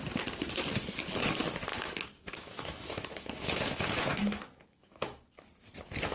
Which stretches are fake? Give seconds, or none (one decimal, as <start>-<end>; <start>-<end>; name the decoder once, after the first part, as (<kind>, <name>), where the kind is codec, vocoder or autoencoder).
1.7-5.4 (autoencoder, DAC-VAE)